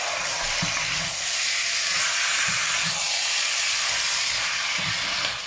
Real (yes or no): yes